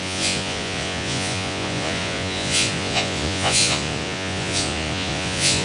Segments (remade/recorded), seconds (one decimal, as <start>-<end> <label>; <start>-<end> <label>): 0.0-5.6 remade